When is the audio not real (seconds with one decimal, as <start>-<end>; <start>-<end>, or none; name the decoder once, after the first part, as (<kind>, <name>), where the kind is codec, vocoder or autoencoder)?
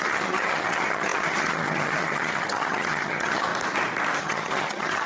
0.0-3.5 (vocoder, HiFi-GAN); 4.2-5.1